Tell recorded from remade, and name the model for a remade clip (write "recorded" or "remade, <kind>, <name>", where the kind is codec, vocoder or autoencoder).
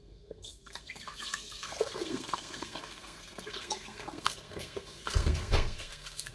remade, codec, SNAC